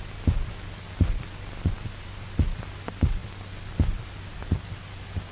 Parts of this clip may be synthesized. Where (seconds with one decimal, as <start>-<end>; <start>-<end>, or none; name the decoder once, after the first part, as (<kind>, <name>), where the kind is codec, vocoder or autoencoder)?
none